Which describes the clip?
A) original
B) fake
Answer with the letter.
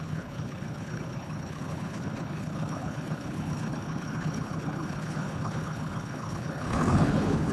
B